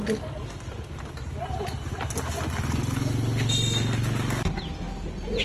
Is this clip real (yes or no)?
yes